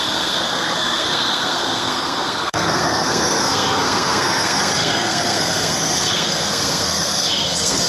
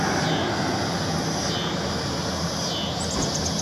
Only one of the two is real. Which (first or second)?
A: second